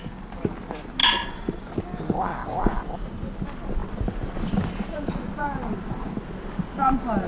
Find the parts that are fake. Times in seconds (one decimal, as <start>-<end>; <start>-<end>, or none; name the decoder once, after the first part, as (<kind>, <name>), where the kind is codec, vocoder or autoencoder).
1.0-1.6 (vocoder, Vocos)